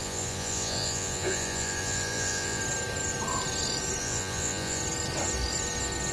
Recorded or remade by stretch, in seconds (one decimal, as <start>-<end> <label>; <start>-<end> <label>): 0.0-2.6 remade; 2.6-4.0 recorded; 4.0-4.8 remade; 4.8-6.1 recorded